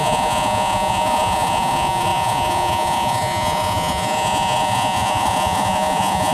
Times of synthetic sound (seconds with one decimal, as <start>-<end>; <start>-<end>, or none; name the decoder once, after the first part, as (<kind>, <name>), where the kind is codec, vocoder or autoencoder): 0.0-6.3 (vocoder, Vocos)